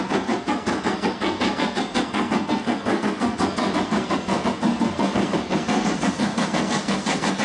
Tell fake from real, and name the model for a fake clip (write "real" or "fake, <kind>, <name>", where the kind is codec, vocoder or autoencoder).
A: fake, codec, SNAC